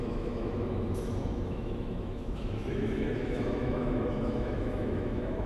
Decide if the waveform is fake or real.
fake